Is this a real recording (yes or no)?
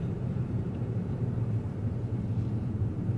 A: no